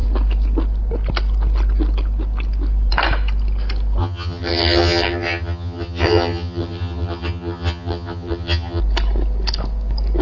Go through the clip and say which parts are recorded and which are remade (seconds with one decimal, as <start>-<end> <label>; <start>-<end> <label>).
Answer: 0.0-4.0 recorded; 4.0-8.8 remade; 8.8-10.2 recorded